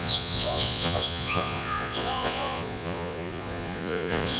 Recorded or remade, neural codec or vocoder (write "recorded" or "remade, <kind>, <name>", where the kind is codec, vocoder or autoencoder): remade, vocoder, Vocos